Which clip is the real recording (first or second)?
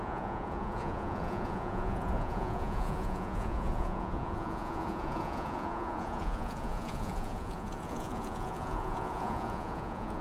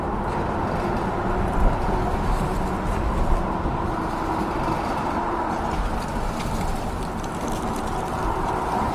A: second